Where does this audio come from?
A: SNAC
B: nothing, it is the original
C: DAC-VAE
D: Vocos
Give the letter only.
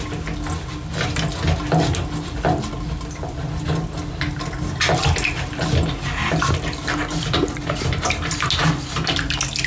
B